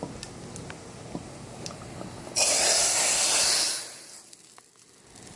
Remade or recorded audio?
recorded